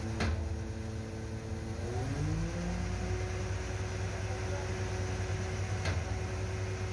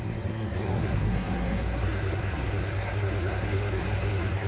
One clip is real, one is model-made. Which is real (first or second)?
first